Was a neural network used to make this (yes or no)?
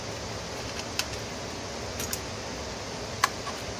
no